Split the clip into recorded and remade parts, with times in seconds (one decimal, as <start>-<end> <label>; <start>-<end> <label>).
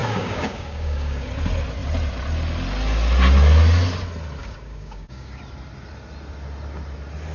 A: 0.0-1.3 remade; 1.3-4.4 recorded; 4.4-5.4 remade; 5.4-7.3 recorded